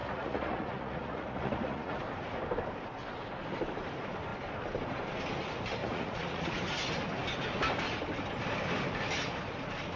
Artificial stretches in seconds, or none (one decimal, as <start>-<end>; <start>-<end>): 0.0-2.0; 5.8-6.6